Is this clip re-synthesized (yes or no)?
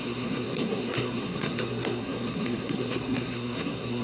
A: yes